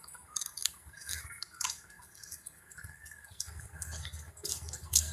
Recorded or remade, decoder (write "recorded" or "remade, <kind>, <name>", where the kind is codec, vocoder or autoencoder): remade, codec, SNAC